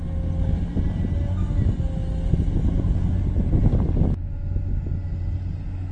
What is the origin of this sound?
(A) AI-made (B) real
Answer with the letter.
B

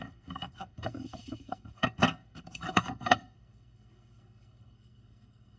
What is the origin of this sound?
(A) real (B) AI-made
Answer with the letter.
B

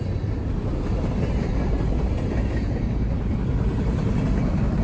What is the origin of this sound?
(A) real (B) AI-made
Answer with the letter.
A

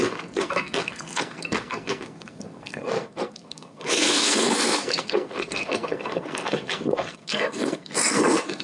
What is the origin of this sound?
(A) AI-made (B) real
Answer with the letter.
A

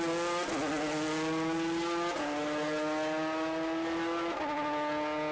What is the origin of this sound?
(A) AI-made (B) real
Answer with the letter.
B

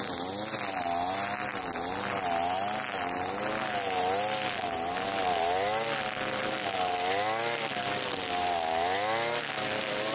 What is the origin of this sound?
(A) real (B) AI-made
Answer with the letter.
A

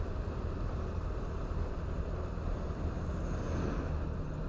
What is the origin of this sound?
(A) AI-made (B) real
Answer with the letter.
B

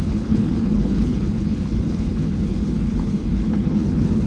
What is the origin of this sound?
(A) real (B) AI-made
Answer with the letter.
B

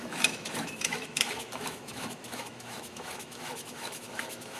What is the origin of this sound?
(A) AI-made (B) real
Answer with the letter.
A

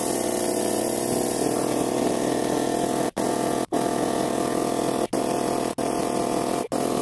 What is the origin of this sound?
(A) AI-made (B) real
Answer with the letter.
B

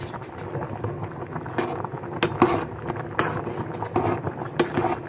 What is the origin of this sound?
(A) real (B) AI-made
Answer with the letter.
A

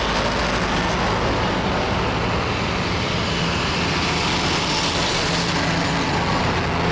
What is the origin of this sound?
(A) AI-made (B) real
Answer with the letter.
B